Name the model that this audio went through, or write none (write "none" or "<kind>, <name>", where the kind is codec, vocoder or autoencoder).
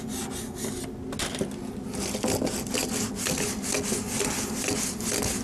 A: none